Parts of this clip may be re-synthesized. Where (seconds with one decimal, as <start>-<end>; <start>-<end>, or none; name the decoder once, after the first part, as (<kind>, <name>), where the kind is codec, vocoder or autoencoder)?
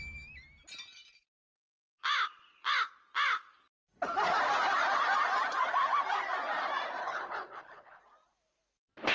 7.0-8.0 (codec, HILCodec)